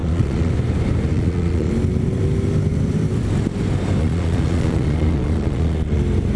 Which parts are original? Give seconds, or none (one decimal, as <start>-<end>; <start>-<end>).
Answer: 0.5-1.1; 1.7-4.0; 6.0-6.4